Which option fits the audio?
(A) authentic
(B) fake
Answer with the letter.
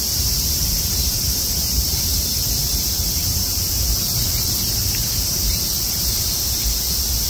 B